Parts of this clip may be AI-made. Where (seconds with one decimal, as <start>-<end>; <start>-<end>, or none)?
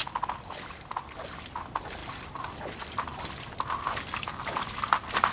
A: 1.6-5.3